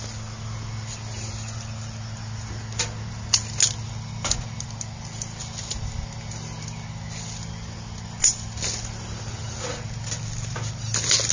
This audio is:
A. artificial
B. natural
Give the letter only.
B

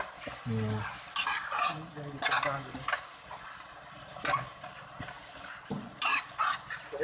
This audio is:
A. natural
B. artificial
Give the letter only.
A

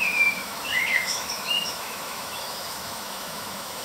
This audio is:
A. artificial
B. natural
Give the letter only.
A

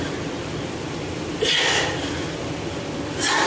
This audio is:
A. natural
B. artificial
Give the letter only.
B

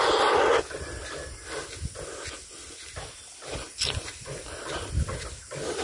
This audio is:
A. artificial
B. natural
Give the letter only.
B